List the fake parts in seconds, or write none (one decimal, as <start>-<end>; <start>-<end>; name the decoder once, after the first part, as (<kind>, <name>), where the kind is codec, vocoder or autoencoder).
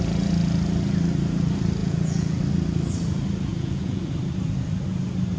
1.8-2.4 (vocoder, Vocos); 3.5-4.1